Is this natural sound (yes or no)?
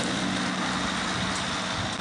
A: yes